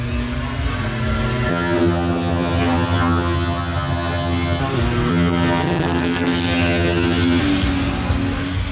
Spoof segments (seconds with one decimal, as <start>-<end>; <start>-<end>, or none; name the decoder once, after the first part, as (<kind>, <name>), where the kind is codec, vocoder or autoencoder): 1.5-4.6 (vocoder, HiFi-GAN); 5.1-7.4